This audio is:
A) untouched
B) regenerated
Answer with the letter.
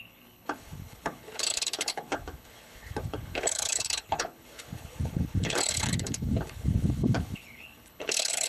B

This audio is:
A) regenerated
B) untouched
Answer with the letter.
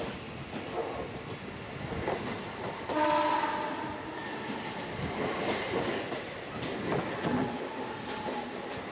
B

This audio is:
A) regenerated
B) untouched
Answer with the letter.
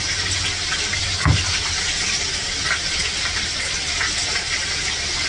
B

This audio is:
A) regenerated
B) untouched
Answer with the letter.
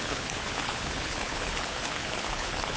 A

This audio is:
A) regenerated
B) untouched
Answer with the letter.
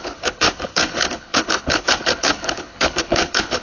A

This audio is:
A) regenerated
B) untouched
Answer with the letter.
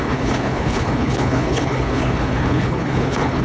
A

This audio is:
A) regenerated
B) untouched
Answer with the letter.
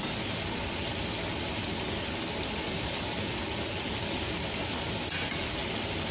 B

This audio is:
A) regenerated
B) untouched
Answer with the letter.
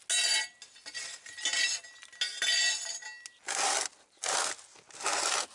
B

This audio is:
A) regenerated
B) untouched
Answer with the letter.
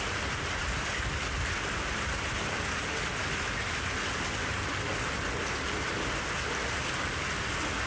B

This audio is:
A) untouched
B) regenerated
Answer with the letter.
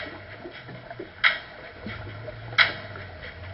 A